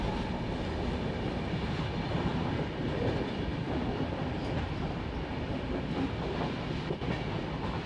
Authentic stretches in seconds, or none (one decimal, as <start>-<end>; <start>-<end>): 0.0-2.3; 5.3-7.9